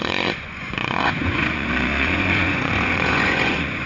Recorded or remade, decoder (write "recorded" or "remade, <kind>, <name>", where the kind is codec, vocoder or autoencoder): remade, vocoder, Vocos